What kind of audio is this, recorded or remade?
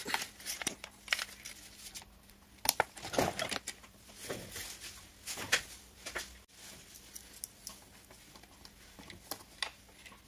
recorded